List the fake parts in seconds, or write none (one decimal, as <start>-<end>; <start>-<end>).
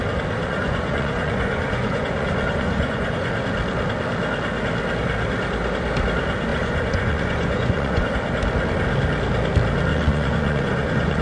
0.4-3.3; 6.5-8.1; 9.9-11.2